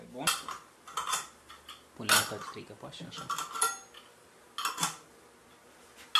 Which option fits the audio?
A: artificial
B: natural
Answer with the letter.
B